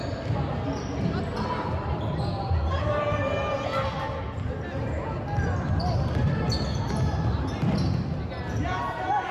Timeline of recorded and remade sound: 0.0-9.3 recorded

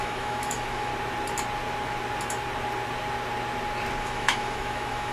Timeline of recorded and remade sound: 0.0-0.9 remade; 0.9-4.0 recorded; 4.0-5.1 remade